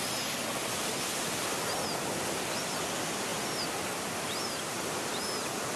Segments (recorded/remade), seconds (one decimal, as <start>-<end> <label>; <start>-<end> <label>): 0.0-5.8 recorded